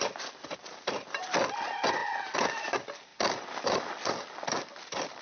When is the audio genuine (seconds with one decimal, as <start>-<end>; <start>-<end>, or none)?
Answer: 0.0-0.6; 1.2-5.2